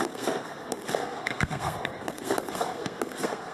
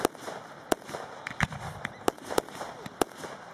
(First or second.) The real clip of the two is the second